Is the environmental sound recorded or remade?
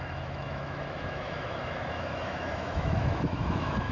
remade